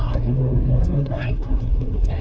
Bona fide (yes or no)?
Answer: no